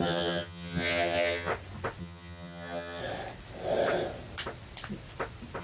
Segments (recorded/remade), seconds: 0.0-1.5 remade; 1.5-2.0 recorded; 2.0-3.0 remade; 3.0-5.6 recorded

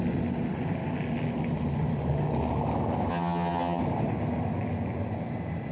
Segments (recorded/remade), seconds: 0.0-3.1 recorded; 3.1-3.8 remade; 3.8-5.7 recorded

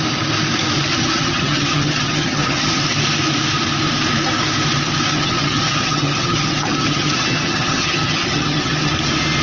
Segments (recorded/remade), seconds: 0.0-0.9 recorded; 0.9-2.8 remade; 2.8-5.1 recorded; 5.1-8.9 remade; 8.9-9.4 recorded

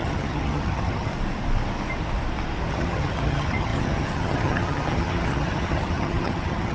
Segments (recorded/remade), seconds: 0.0-1.1 remade; 1.1-2.7 recorded; 2.7-6.7 remade

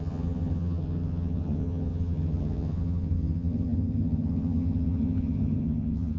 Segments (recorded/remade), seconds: 0.0-6.2 remade

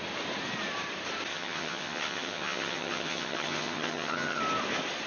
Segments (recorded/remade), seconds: 0.0-1.3 recorded; 1.3-4.4 remade; 4.4-5.1 recorded

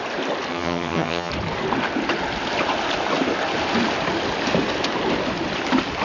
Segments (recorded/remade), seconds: 0.0-0.5 recorded; 0.5-1.3 remade; 1.3-6.0 recorded

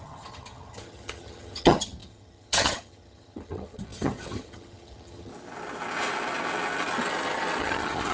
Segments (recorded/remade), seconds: 0.0-5.3 remade; 5.3-7.6 recorded; 7.6-8.1 remade